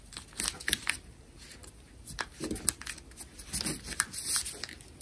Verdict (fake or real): real